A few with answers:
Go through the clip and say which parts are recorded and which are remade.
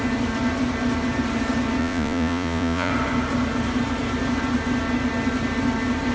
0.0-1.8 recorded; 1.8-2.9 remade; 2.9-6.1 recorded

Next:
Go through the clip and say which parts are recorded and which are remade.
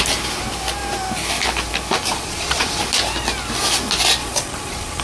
0.0-2.1 recorded; 2.1-2.8 remade; 2.8-4.2 recorded; 4.2-5.0 remade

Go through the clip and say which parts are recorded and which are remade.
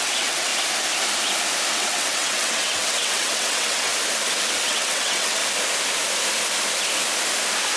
0.0-0.5 remade; 0.5-1.7 recorded; 1.7-3.9 remade; 3.9-4.6 recorded; 4.6-5.4 remade; 5.4-7.8 recorded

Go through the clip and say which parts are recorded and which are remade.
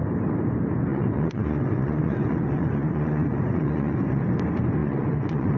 0.0-0.9 recorded; 0.9-4.3 remade; 4.3-4.8 recorded; 4.8-5.6 remade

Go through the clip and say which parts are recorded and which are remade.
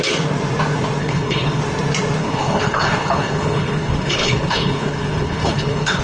0.0-1.0 recorded; 1.0-1.6 remade; 1.6-2.2 recorded; 2.2-6.0 remade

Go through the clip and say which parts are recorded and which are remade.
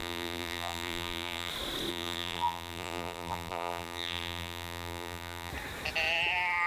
0.0-1.5 remade; 1.5-1.9 recorded; 1.9-5.5 remade; 5.5-6.7 recorded